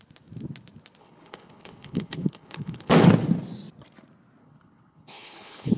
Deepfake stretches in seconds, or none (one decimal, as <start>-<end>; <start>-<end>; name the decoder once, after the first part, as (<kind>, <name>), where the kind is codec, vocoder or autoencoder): 1.0-2.9 (codec, HILCodec); 4.4-5.8